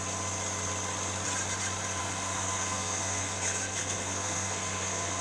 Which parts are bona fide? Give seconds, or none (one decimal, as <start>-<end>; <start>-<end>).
0.0-2.0